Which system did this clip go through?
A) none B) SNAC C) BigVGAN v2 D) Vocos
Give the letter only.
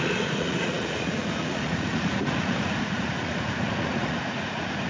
D